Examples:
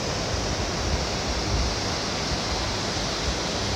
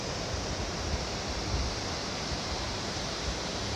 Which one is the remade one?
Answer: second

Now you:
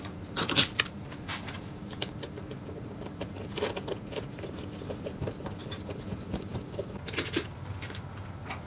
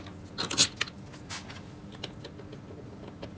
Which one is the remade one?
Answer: first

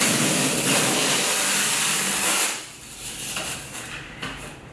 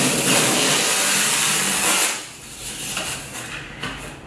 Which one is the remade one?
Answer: first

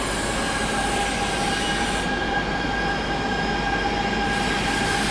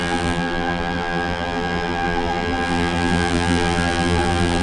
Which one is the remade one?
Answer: second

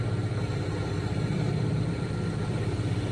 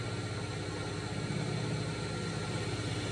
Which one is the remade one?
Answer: first